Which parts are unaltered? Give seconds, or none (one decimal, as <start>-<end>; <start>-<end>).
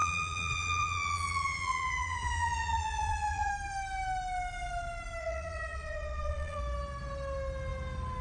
3.5-5.2; 6.6-8.2